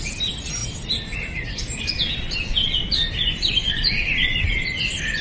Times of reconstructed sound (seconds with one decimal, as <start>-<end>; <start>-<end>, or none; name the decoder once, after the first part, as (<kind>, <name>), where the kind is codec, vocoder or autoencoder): none